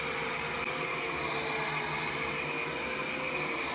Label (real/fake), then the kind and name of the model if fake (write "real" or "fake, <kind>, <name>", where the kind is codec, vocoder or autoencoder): real